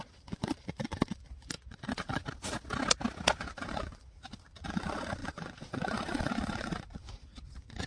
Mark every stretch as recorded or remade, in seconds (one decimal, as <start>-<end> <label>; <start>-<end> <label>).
0.0-2.2 remade; 2.2-3.4 recorded; 3.4-7.9 remade

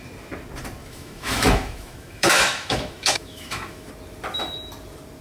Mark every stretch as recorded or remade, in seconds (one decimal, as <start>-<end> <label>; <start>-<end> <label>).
0.0-0.8 recorded; 0.8-3.9 remade; 3.9-5.2 recorded

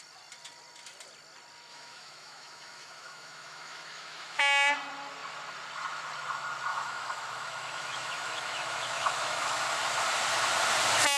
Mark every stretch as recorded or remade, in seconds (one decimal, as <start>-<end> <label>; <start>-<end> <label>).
0.0-1.7 recorded; 1.7-4.4 remade; 4.4-6.7 recorded; 6.7-9.6 remade; 9.6-11.2 recorded

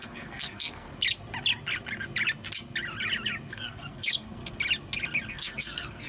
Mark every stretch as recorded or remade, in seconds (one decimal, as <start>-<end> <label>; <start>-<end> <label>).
0.0-0.9 remade; 0.9-3.5 recorded; 3.5-4.4 remade; 4.4-5.3 recorded; 5.3-6.1 remade

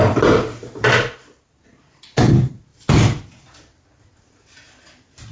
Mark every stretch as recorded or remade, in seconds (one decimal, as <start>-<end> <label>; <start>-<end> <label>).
0.0-5.3 recorded

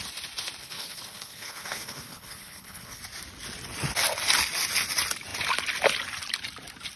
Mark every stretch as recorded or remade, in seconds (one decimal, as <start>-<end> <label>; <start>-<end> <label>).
0.0-0.6 recorded; 0.6-3.0 remade; 3.0-7.0 recorded

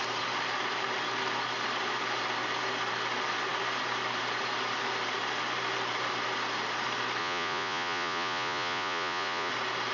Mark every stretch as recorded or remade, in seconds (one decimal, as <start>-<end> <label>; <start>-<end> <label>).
0.0-7.2 recorded; 7.2-9.5 remade; 9.5-9.9 recorded